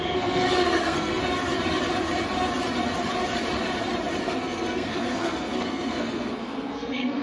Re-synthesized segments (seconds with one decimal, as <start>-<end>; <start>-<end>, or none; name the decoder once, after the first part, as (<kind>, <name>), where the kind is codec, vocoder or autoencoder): 0.0-1.2 (codec, SNAC); 4.2-7.2